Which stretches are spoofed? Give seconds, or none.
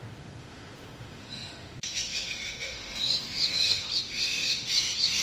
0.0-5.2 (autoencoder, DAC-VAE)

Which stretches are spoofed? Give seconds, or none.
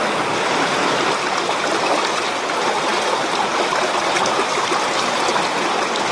none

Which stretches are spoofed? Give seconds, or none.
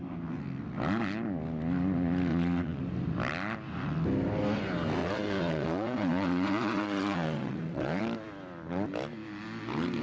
2.3-2.8 (vocoder, WaveNeXt); 5.0-8.0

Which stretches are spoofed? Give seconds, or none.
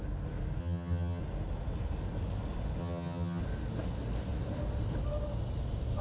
0.6-1.2 (vocoder, HiFi-GAN); 2.8-3.4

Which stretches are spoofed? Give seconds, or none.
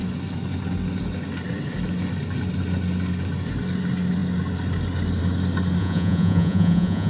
5.8-7.1 (vocoder, Vocos)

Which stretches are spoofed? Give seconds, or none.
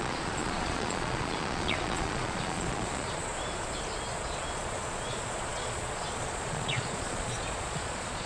0.0-3.3 (vocoder, Vocos); 4.1-8.3